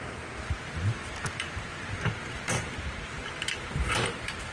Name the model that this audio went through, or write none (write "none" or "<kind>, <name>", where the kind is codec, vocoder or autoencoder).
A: vocoder, BigVGAN v2